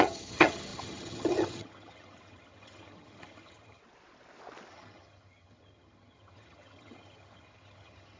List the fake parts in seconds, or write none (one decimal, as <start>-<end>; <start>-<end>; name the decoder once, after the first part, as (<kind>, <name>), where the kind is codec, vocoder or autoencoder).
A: 0.0-3.8 (vocoder, HiFi-GAN); 4.7-8.2